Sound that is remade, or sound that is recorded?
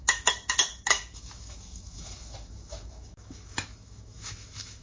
remade